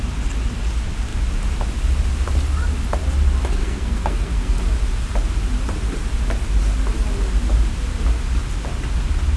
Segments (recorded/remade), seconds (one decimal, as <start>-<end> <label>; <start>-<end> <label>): 0.0-3.6 recorded; 3.6-4.6 remade; 4.6-9.4 recorded